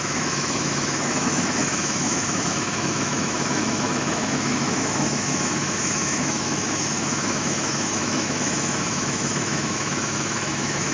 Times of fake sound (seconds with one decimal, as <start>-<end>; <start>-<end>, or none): 0.0-10.9